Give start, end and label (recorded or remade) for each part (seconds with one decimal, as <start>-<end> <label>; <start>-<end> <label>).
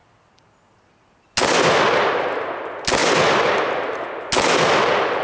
0.0-5.2 recorded